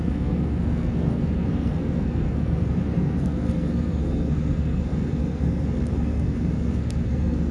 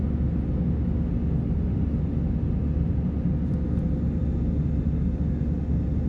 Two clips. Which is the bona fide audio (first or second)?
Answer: second